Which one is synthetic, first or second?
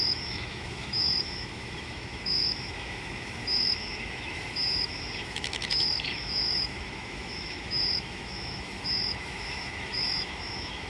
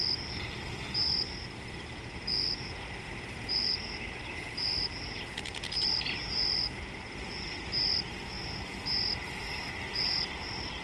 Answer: first